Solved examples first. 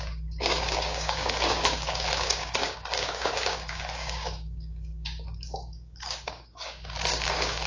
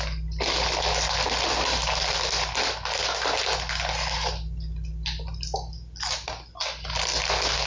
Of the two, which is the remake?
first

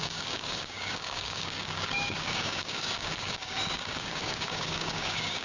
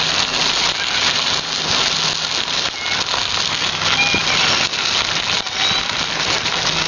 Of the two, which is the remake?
first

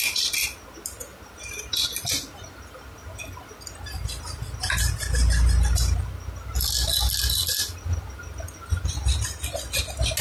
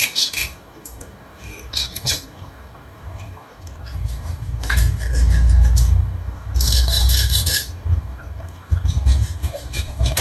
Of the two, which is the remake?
second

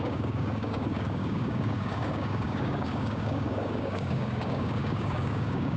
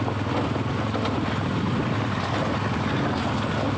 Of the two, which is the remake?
first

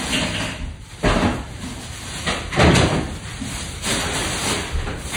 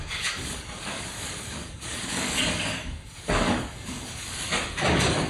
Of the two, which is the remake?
second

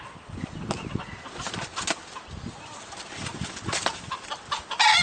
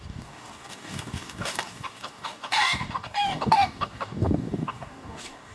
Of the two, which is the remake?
second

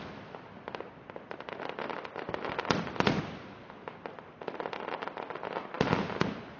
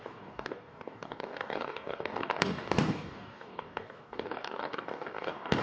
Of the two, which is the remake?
second